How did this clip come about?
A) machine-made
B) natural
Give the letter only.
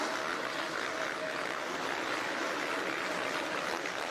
B